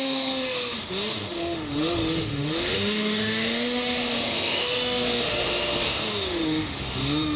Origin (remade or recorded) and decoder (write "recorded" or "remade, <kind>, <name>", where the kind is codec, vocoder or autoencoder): remade, autoencoder, DAC-VAE